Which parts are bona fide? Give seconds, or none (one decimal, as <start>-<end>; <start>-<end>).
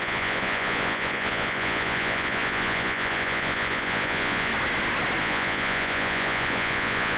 4.5-5.2